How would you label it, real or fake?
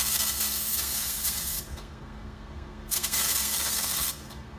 fake